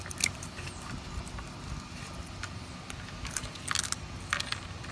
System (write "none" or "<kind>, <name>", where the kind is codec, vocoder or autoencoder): none